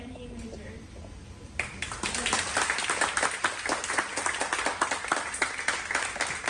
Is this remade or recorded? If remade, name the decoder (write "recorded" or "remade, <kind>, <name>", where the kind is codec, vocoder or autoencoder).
recorded